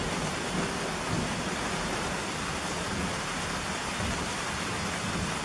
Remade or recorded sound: recorded